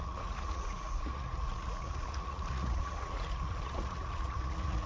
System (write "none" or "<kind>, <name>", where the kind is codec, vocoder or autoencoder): vocoder, Vocos